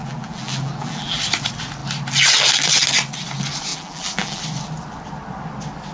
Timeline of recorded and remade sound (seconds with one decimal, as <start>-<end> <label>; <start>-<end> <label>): 0.0-1.2 remade; 1.2-3.7 recorded; 3.7-4.4 remade; 4.4-5.9 recorded

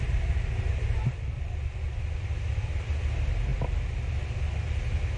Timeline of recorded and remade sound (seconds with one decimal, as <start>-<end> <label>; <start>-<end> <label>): 0.0-5.2 recorded

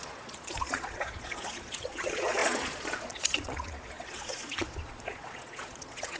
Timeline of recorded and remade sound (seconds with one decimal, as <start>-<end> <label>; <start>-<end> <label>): 0.0-6.2 remade

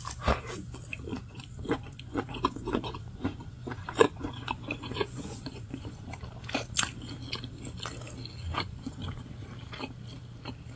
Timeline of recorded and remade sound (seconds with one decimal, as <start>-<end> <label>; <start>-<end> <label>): 0.0-1.1 recorded; 1.1-6.1 remade; 6.1-8.5 recorded; 8.5-9.5 remade; 9.5-10.8 recorded

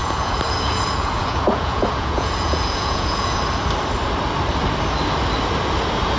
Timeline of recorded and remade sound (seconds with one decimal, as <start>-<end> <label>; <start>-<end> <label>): 0.0-3.4 remade; 3.4-6.2 recorded